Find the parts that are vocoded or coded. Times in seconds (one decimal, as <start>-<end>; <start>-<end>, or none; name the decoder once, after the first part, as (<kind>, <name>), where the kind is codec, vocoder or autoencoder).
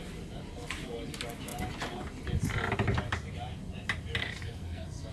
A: 4.2-5.1 (codec, SNAC)